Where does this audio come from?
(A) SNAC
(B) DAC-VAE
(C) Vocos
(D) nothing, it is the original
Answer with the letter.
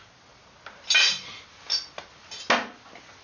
D